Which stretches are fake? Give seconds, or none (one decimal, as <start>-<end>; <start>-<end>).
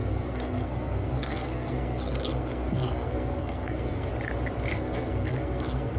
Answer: 0.0-4.1; 4.7-6.0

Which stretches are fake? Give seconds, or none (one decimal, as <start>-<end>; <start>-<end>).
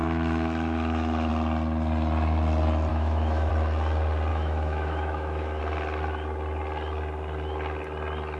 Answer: 0.0-1.3; 2.9-3.5; 4.3-5.6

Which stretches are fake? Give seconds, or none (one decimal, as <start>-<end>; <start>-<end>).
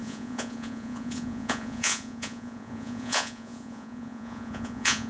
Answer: 0.0-5.1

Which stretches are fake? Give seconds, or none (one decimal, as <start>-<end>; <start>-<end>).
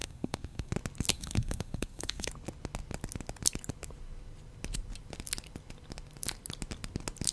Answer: 0.0-0.7; 1.1-2.3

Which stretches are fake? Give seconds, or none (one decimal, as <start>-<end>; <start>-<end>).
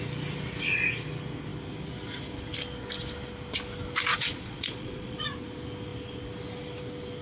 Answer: 4.1-5.3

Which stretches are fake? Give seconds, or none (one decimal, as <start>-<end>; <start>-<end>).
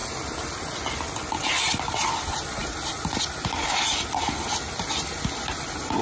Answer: none